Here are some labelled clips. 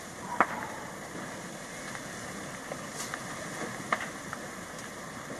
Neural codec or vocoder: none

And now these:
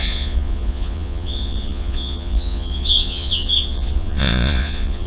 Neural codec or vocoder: vocoder, Vocos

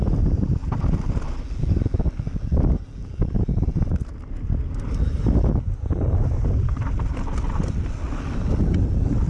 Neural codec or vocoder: none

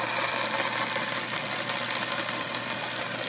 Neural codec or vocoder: none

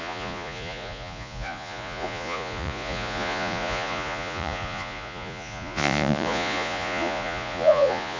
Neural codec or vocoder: vocoder, Vocos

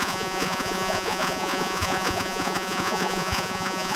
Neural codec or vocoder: vocoder, Vocos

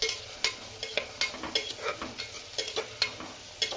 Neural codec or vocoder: none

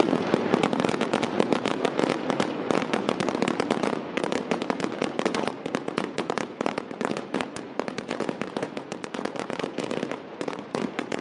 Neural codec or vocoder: vocoder, Vocos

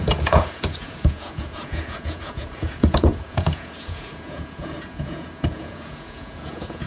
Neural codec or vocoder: vocoder, Vocos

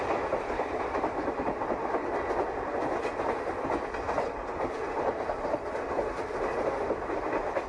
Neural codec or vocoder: none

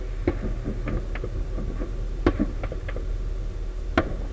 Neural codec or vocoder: none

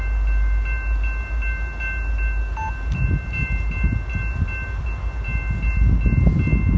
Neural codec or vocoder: none